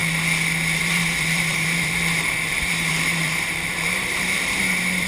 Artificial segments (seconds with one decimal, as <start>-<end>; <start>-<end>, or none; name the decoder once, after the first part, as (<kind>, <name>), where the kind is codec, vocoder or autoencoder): 0.8-5.1 (vocoder, BigVGAN v2)